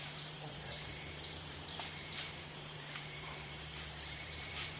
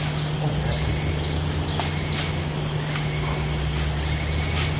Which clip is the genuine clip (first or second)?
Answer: second